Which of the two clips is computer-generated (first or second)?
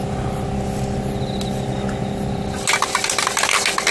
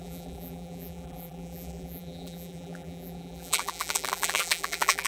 second